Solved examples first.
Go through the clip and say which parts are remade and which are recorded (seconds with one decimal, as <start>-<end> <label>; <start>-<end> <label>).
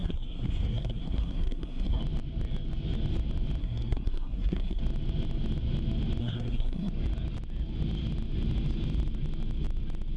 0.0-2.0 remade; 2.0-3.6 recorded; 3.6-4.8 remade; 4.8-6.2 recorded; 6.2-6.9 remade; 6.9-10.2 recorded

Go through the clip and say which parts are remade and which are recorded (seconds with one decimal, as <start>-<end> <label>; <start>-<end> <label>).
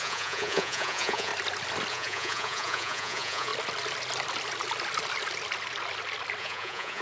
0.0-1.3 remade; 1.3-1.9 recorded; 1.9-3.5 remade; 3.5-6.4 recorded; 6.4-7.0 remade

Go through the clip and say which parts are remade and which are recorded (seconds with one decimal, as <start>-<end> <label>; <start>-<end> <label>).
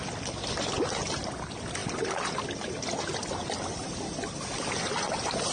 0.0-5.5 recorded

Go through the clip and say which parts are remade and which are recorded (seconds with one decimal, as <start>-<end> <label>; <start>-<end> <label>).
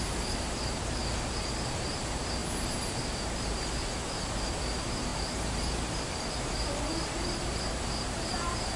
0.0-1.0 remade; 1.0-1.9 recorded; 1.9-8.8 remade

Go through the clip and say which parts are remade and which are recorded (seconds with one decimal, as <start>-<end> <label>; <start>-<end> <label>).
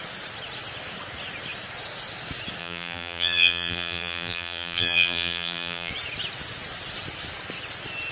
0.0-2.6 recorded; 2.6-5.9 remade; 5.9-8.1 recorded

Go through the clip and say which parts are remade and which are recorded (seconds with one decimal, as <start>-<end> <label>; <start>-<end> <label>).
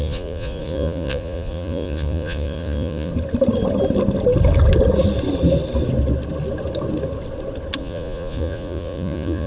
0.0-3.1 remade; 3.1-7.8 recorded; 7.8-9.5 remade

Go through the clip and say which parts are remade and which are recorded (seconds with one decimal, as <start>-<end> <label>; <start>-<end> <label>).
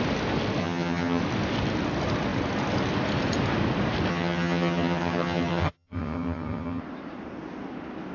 0.0-0.6 recorded; 0.6-1.2 remade; 1.2-4.1 recorded; 4.1-6.8 remade; 6.8-8.1 recorded